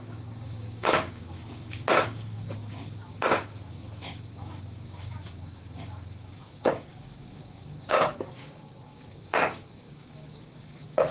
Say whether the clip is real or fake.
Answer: fake